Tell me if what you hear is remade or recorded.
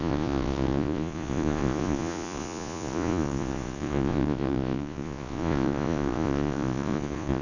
remade